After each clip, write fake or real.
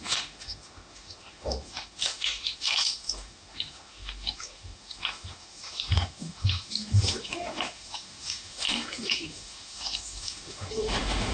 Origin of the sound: fake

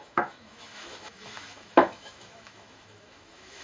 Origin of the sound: fake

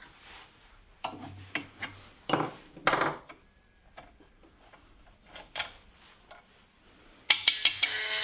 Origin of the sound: real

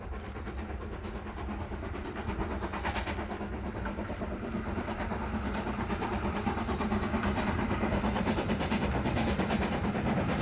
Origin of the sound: real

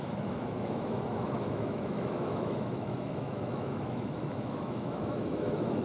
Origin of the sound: fake